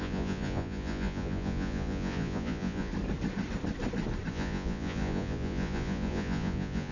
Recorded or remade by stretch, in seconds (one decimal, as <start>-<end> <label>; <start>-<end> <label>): 0.0-2.9 remade; 2.9-4.3 recorded; 4.3-6.9 remade